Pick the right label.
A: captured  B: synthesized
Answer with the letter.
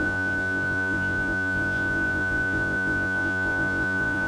B